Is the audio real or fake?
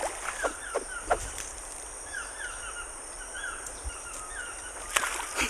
real